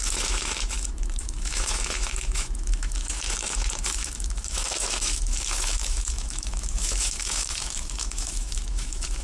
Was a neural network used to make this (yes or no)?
yes